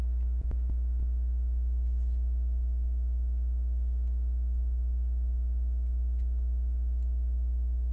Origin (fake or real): real